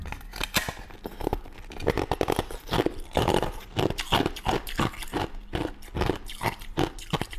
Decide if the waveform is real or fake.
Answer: real